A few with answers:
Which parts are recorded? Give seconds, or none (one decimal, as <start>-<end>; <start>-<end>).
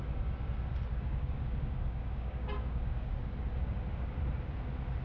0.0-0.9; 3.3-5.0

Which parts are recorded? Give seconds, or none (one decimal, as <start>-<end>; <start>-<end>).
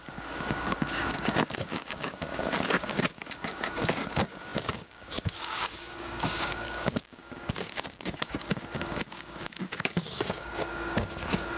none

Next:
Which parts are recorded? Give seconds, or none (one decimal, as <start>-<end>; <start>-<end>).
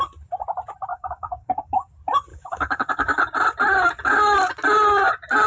0.0-0.9; 1.9-2.3; 3.2-5.5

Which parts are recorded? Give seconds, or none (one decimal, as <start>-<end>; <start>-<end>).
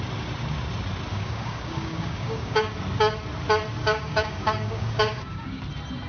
0.0-1.1; 2.7-3.8; 5.6-6.1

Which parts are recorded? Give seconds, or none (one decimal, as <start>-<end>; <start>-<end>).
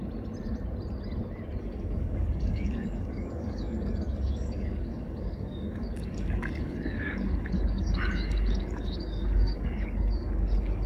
0.0-1.6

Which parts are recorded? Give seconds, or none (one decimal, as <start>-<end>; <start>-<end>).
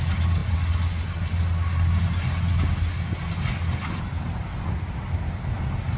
0.0-6.0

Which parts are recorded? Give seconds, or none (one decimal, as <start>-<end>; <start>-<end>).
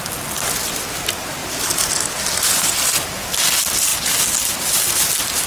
0.0-5.5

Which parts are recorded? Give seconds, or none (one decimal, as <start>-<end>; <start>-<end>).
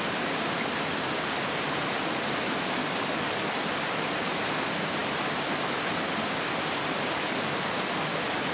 0.0-2.8; 3.4-8.5